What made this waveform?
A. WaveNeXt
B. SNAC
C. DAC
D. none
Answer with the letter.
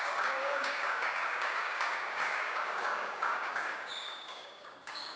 C